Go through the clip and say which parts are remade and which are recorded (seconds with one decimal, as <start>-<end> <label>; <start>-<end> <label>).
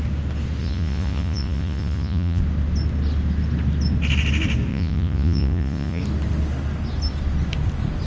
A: 0.0-0.6 recorded; 0.6-2.4 remade; 2.4-4.7 recorded; 4.7-6.0 remade; 6.0-8.1 recorded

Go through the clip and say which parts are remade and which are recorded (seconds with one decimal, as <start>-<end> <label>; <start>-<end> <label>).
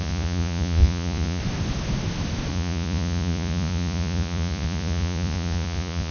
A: 0.0-1.4 remade; 1.4-2.5 recorded; 2.5-6.1 remade